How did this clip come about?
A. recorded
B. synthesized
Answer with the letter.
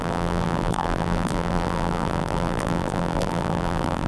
B